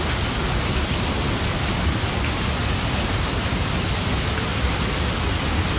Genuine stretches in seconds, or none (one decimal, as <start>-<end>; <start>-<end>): 0.0-5.8